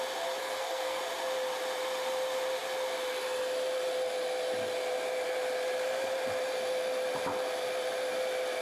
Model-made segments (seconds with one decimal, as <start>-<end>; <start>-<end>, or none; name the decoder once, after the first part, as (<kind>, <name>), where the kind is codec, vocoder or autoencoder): 0.4-1.0 (codec, SNAC)